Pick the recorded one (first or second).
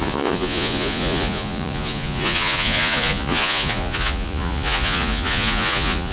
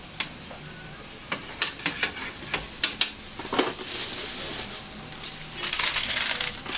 second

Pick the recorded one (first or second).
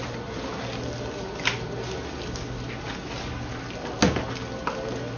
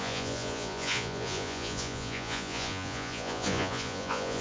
first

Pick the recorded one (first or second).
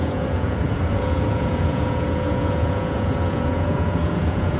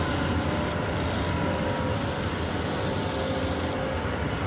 second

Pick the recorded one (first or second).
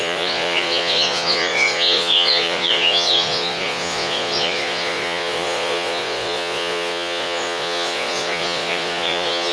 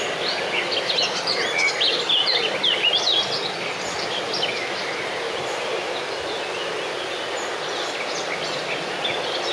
second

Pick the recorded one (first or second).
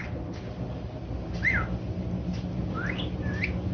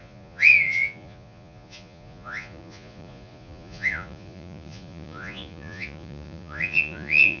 first